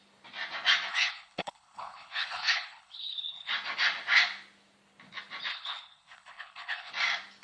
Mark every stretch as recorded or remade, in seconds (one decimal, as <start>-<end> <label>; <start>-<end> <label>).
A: 0.0-0.9 recorded; 0.9-3.5 remade; 3.5-5.5 recorded; 5.5-6.9 remade; 6.9-7.4 recorded